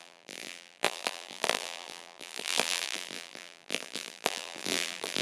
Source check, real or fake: fake